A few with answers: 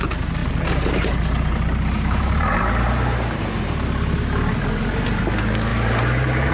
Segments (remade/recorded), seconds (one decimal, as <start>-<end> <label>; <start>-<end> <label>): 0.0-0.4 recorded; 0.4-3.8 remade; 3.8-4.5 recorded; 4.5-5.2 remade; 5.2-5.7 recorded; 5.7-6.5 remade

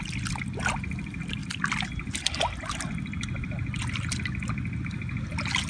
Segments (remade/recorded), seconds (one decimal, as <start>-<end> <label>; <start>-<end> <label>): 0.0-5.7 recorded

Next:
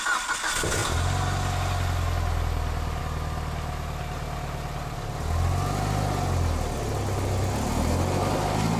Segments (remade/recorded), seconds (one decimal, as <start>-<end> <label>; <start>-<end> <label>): 0.0-8.8 recorded

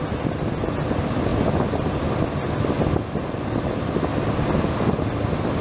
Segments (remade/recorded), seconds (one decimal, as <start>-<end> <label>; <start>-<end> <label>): 0.0-5.6 recorded

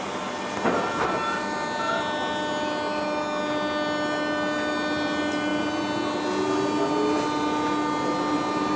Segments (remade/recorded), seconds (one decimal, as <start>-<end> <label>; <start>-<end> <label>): 0.0-8.8 recorded

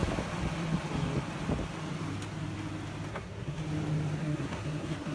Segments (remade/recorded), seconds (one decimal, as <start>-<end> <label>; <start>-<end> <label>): 0.0-3.1 recorded; 3.1-3.6 remade; 3.6-4.2 recorded; 4.2-5.1 remade

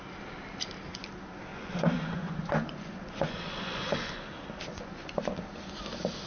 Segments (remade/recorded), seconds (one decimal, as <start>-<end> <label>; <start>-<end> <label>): 0.0-1.5 recorded; 1.5-4.2 remade; 4.2-4.7 recorded; 4.7-5.3 remade; 5.3-6.3 recorded